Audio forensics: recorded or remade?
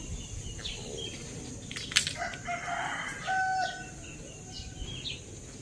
recorded